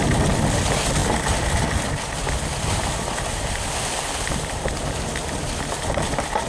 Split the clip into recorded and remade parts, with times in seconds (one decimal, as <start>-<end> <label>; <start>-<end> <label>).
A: 0.0-6.5 recorded